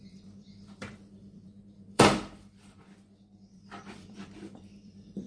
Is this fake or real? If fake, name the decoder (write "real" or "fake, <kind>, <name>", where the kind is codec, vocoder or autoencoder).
fake, vocoder, BigVGAN v2